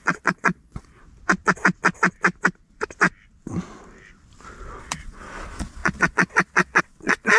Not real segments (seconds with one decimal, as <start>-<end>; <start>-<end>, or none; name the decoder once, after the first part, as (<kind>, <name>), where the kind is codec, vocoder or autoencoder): 0.0-1.0 (vocoder, Vocos); 4.8-7.4